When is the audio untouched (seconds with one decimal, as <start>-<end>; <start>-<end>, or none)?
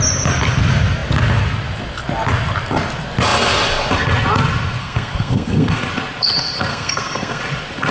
0.0-4.8; 5.8-6.7; 7.4-7.9